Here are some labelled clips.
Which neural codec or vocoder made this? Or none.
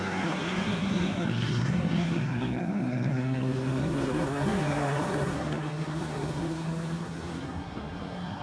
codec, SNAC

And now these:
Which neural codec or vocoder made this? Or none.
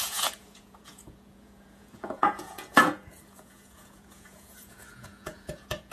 vocoder, Vocos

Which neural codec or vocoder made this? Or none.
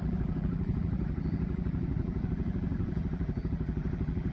vocoder, BigVGAN v2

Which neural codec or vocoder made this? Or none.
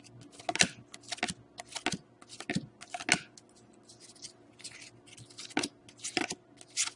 none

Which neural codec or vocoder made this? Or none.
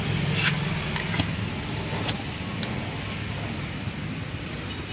none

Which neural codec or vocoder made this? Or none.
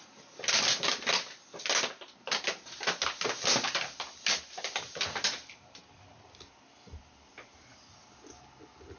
none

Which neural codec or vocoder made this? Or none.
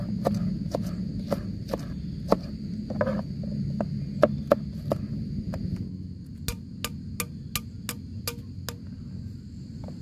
none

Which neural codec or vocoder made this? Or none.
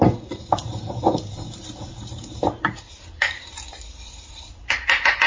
vocoder, BigVGAN v2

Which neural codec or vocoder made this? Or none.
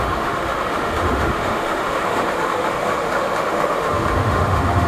autoencoder, DAC-VAE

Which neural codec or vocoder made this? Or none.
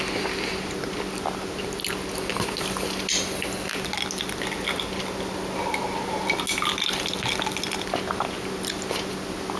none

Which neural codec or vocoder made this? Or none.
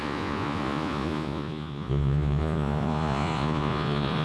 vocoder, Vocos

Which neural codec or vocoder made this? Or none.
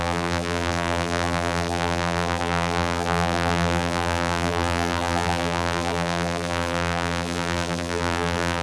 vocoder, BigVGAN v2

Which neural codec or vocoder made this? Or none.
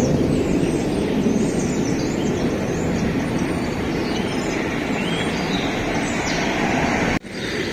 vocoder, BigVGAN v2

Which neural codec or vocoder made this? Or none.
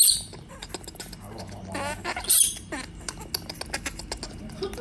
none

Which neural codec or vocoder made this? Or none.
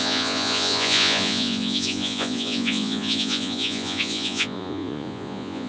vocoder, Vocos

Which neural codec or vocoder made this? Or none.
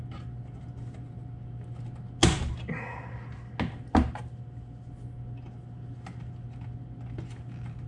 none